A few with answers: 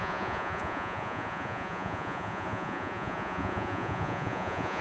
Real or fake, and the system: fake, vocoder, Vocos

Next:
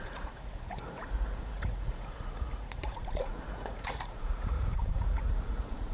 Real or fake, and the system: fake, vocoder, Vocos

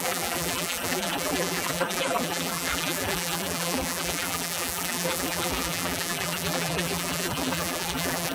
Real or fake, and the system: fake, vocoder, BigVGAN v2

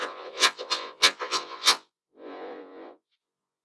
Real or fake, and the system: fake, vocoder, Vocos